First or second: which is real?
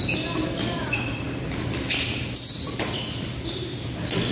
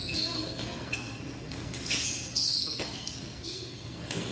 first